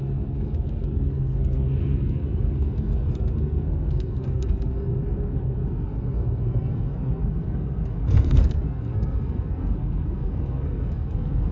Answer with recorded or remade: remade